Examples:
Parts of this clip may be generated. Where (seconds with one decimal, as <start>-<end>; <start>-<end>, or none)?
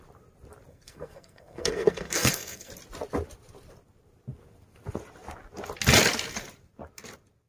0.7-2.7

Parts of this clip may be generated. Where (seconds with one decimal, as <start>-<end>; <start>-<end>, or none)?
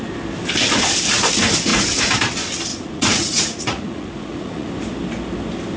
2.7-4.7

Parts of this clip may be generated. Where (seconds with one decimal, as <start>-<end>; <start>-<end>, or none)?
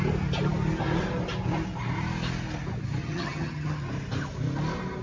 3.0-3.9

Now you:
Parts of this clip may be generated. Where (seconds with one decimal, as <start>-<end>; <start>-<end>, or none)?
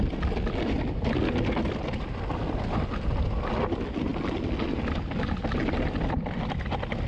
none